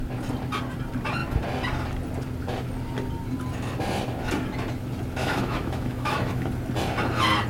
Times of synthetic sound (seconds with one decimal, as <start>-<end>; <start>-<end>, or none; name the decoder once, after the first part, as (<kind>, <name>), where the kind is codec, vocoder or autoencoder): 5.2-6.5 (autoencoder, DAC-VAE)